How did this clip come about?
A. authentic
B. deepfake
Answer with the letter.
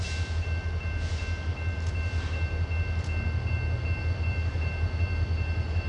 A